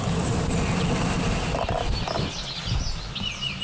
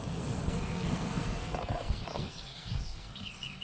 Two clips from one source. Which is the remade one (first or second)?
second